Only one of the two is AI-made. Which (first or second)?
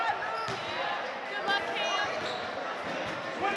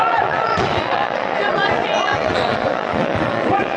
second